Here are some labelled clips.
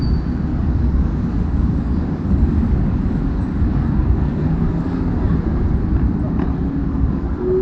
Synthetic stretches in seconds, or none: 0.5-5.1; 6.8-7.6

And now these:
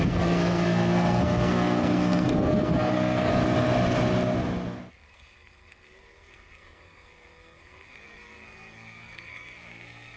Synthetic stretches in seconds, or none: 0.0-3.3; 4.9-10.2

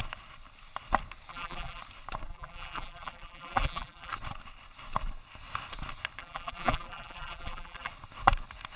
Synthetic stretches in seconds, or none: 1.3-1.8; 2.3-4.1; 6.2-7.9

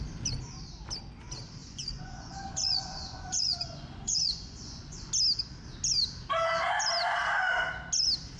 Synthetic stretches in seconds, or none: 1.6-5.1

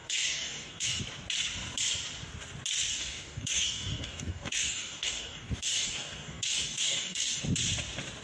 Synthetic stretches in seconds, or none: 0.0-1.0; 2.9-7.4

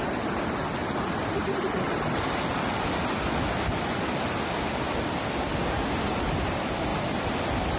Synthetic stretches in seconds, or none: none

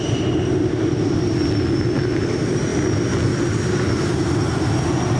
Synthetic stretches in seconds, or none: none